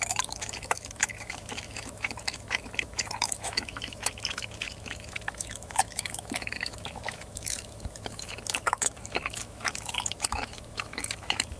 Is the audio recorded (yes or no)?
no